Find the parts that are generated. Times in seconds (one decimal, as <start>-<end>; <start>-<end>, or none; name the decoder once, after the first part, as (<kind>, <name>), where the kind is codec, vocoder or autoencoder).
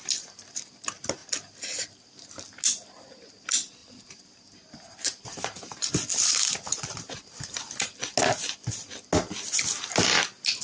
3.8-5.9 (vocoder, BigVGAN v2); 6.7-7.6